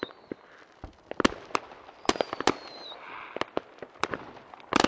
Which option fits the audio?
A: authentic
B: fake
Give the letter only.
A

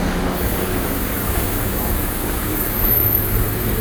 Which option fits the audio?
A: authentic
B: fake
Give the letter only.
B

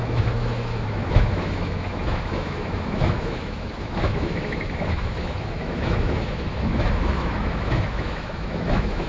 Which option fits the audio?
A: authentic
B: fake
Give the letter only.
B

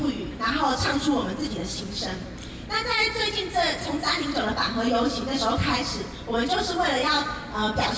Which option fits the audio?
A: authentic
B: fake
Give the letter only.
B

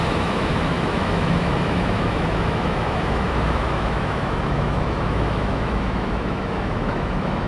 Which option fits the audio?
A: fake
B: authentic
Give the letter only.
A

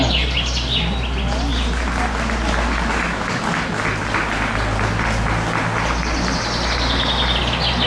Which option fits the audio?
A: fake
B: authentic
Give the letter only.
B